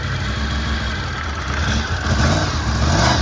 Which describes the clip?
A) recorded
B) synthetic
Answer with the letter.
A